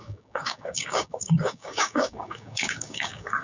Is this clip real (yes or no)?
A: no